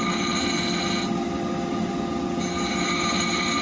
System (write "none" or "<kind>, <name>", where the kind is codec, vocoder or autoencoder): none